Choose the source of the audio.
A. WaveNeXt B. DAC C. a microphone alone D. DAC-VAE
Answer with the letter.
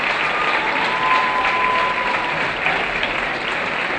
C